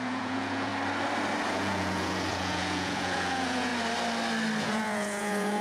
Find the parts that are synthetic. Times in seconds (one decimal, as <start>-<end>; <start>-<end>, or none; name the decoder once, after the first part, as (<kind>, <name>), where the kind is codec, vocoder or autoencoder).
0.0-0.7 (vocoder, Vocos); 1.5-3.7; 4.6-5.6